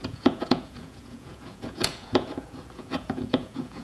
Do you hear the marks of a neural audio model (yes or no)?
yes